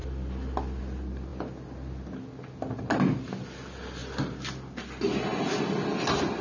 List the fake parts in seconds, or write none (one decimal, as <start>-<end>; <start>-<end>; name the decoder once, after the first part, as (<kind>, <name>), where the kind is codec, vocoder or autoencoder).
none